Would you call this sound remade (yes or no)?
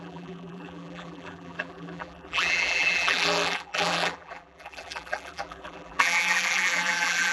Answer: yes